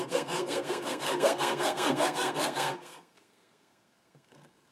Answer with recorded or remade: remade